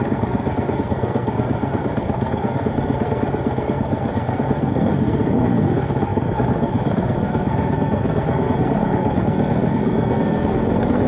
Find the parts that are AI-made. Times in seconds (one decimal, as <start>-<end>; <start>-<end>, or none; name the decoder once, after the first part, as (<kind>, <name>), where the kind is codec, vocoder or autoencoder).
0.0-11.1 (codec, SNAC)